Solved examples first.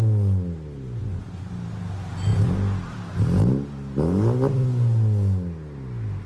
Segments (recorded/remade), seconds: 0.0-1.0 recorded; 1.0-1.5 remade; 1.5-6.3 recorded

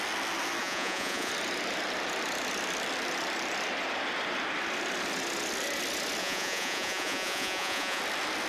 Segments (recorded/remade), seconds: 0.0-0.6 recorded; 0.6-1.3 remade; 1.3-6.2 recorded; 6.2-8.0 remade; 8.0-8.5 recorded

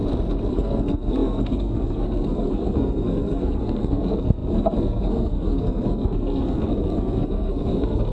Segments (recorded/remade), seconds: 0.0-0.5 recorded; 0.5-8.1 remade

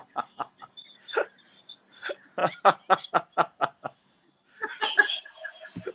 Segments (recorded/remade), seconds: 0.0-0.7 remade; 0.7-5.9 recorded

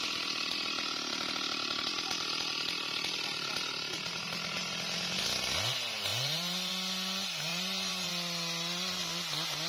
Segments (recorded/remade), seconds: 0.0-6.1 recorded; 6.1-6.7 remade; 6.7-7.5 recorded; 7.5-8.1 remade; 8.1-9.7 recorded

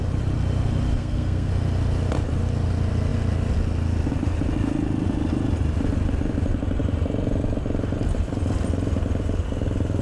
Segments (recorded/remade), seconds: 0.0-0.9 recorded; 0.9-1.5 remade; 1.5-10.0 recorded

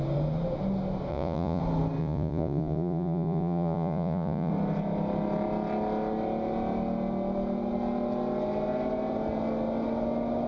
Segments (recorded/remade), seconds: 0.0-1.1 recorded; 1.1-1.6 remade; 1.6-2.0 recorded; 2.0-4.5 remade; 4.5-10.5 recorded